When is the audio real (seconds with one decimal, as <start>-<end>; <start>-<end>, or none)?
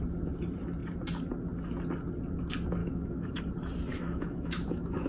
0.0-2.8; 3.4-3.9